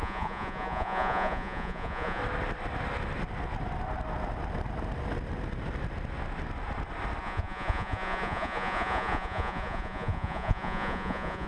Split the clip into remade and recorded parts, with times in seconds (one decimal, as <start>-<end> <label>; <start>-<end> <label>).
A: 0.0-2.2 remade; 2.2-7.2 recorded; 7.2-11.5 remade